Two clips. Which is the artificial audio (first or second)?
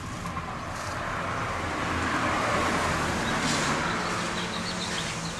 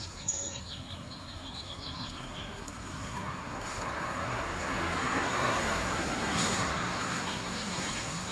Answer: second